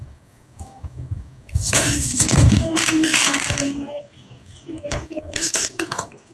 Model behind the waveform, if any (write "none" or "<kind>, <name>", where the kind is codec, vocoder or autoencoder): codec, DAC